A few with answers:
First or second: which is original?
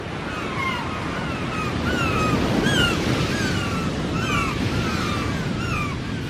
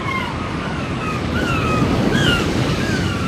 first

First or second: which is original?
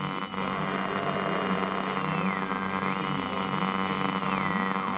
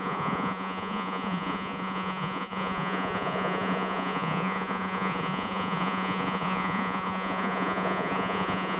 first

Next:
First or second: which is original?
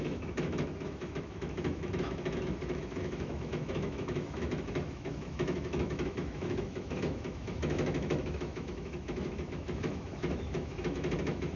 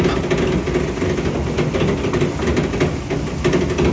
second